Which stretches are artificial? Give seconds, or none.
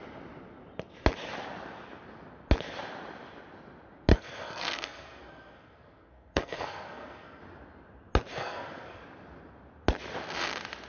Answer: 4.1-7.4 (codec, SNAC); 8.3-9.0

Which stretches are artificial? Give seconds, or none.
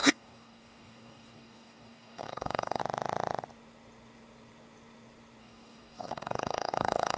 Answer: 0.0-2.8 (codec, DAC); 5.4-7.2